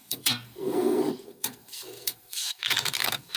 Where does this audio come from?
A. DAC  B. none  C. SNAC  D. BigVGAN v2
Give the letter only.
C